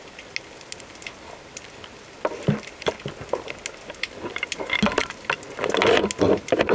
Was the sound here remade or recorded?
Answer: recorded